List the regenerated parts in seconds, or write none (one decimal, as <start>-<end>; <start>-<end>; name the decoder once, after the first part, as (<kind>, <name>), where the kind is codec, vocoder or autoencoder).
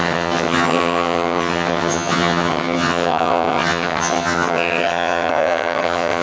0.0-6.2 (vocoder, HiFi-GAN)